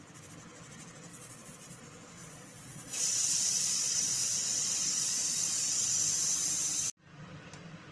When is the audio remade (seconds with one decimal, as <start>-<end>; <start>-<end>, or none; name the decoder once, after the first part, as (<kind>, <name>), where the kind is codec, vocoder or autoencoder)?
1.1-1.8 (vocoder, Vocos); 2.2-6.0